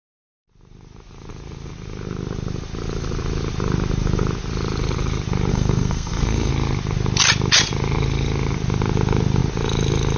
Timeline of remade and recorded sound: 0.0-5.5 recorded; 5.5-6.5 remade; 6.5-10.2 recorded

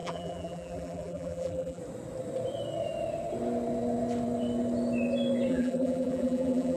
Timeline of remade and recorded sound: 0.0-1.8 remade; 1.8-5.5 recorded; 5.5-6.8 remade

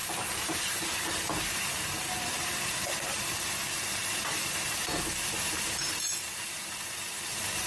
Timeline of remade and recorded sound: 0.0-7.7 remade

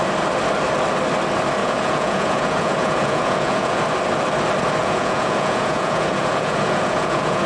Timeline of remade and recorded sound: 0.0-1.6 recorded; 1.6-3.8 remade; 3.8-4.8 recorded; 4.8-7.5 remade

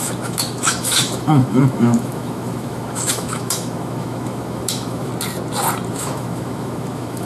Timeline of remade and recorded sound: 0.0-5.1 remade; 5.1-5.9 recorded; 5.9-7.2 remade

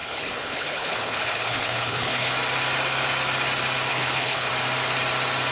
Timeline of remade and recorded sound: 0.0-2.3 remade; 2.3-3.9 recorded; 3.9-4.5 remade; 4.5-5.5 recorded

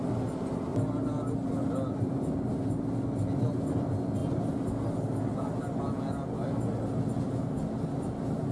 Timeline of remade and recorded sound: 0.0-8.5 recorded